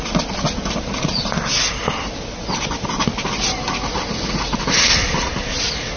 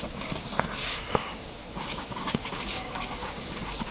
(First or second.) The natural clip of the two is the first